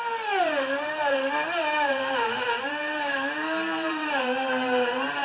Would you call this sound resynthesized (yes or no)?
yes